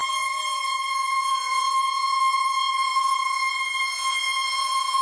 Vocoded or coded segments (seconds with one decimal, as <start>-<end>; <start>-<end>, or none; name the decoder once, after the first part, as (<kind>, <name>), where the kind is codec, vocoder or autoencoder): 0.0-5.0 (vocoder, Vocos)